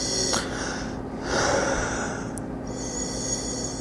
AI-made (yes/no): no